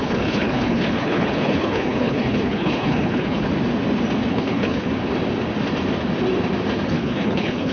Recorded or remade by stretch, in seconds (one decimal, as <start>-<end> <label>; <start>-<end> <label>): 0.0-3.5 remade; 3.5-4.3 recorded; 4.3-4.9 remade; 4.9-6.9 recorded; 6.9-7.7 remade